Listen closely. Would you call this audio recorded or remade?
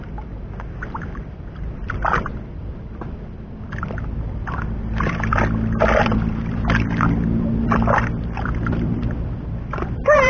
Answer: remade